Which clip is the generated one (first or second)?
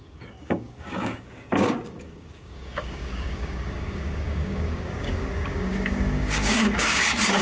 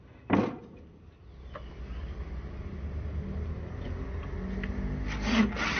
first